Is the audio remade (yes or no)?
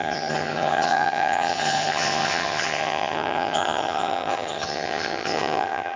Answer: yes